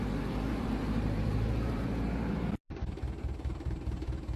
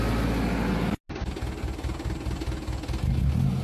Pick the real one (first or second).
second